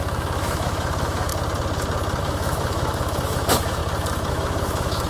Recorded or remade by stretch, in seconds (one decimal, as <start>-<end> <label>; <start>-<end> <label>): 0.0-1.3 remade; 1.3-2.2 recorded; 2.2-3.8 remade; 3.8-4.3 recorded; 4.3-5.1 remade